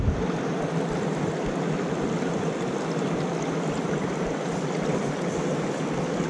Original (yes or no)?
yes